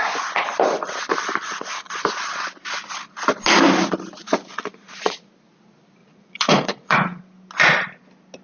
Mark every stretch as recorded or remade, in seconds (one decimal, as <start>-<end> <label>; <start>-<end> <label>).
0.0-1.4 recorded; 1.4-2.0 remade; 2.0-4.2 recorded; 4.2-5.3 remade; 5.3-6.0 recorded; 6.0-7.2 remade; 7.2-8.4 recorded